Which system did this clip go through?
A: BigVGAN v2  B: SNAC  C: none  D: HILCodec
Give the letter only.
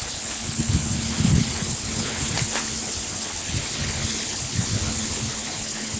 D